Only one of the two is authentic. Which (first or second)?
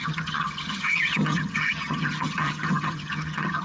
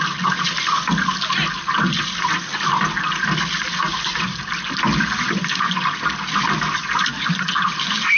second